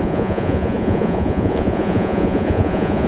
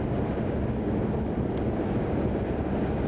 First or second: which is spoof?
first